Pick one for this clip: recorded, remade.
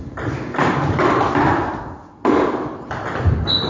recorded